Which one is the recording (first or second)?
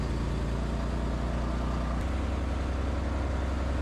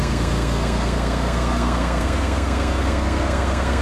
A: first